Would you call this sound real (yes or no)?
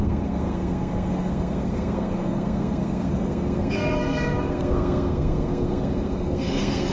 no